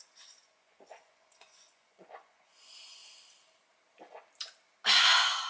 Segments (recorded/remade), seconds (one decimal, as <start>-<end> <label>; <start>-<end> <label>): 0.0-3.0 remade; 3.0-5.0 recorded; 5.0-5.5 remade